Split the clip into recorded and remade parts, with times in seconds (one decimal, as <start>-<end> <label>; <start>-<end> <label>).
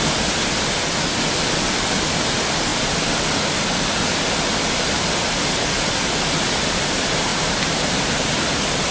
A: 0.0-7.3 recorded; 7.3-8.9 remade